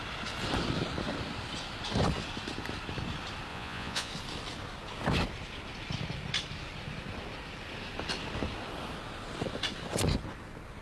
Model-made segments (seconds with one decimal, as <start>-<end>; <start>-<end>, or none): 3.5-4.1